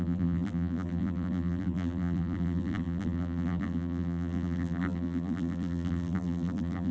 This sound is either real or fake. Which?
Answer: fake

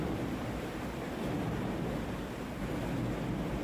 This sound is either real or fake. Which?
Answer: real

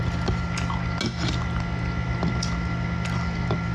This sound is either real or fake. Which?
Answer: real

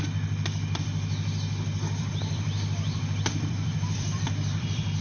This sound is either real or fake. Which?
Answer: fake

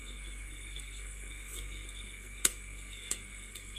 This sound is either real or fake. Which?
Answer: fake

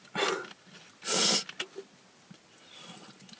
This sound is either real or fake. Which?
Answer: real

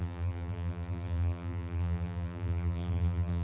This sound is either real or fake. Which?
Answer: fake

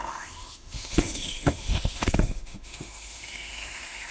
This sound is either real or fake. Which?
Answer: fake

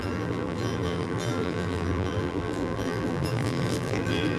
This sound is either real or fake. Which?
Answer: fake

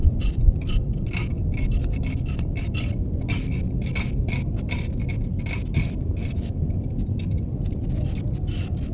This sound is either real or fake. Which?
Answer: real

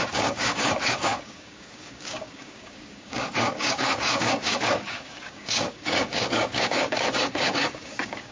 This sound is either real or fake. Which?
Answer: fake